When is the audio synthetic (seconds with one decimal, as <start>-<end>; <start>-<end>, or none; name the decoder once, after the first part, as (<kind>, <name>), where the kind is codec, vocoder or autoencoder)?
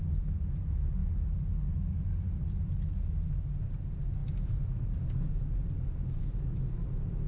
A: none